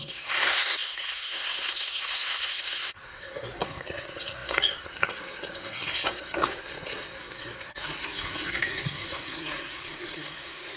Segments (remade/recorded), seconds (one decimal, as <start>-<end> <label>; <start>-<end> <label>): 0.0-10.8 remade